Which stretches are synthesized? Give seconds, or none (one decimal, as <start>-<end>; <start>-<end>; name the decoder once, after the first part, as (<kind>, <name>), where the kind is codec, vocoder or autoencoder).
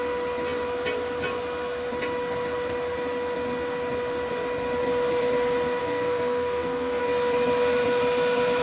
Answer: 5.8-7.0 (codec, SNAC)